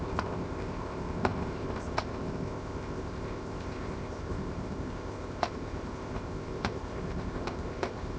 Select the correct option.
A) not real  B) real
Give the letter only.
A